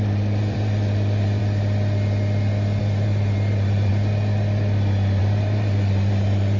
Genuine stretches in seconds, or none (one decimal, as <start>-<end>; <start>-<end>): 1.4-2.8; 3.9-5.2